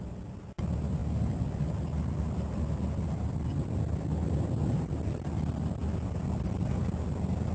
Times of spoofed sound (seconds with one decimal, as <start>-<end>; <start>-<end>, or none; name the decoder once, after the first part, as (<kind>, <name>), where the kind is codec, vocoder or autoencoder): 1.0-4.3 (vocoder, BigVGAN v2)